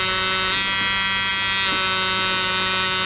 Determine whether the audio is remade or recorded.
recorded